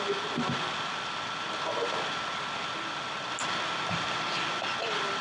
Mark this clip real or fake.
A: real